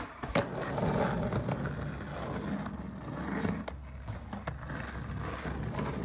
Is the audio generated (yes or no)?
no